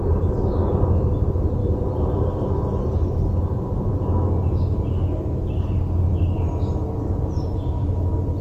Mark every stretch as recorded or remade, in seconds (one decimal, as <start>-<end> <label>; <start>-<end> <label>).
0.0-1.6 recorded; 1.6-2.3 remade; 2.3-8.4 recorded